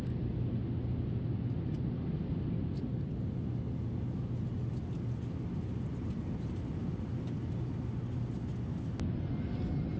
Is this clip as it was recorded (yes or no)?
yes